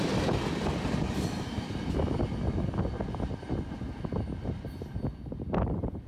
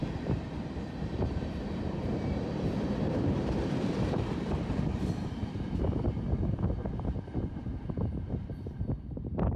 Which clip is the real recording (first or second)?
first